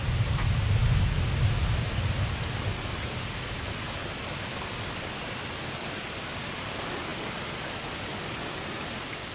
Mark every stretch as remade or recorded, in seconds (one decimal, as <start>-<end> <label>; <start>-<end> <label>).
0.0-9.3 recorded